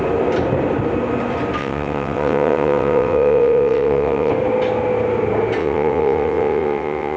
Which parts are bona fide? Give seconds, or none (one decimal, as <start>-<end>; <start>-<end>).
0.0-1.6; 4.3-5.6